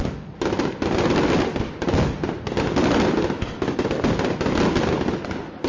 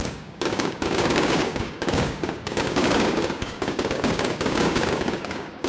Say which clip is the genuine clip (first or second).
first